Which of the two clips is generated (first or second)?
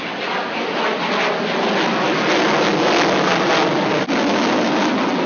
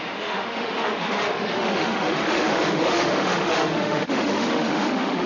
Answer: second